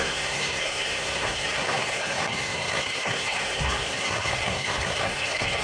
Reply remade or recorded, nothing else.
remade